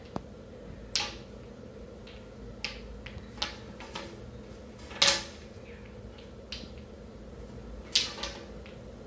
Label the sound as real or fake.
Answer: real